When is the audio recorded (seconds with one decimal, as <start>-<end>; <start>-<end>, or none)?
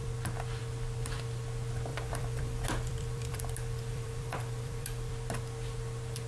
0.0-1.9; 5.1-6.3